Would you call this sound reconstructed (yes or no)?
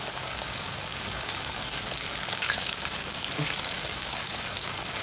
yes